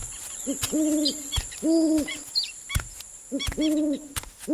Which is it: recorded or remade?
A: recorded